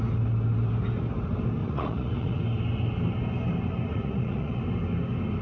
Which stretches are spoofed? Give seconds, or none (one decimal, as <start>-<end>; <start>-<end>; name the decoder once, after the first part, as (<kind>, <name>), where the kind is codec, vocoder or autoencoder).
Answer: 1.6-2.4 (vocoder, Vocos); 3.9-4.6